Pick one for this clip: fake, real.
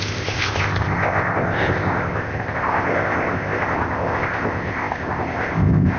fake